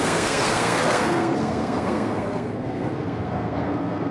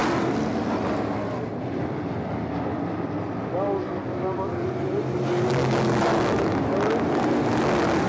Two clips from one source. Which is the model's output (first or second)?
first